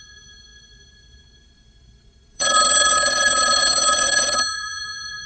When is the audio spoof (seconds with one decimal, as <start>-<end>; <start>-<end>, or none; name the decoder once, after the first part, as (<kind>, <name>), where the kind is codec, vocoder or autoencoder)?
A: 0.0-5.3 (vocoder, Vocos)